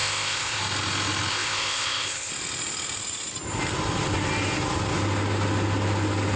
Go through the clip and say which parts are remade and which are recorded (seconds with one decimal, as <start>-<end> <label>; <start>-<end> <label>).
0.0-0.6 remade; 0.6-1.3 recorded; 1.3-2.3 remade; 2.3-6.4 recorded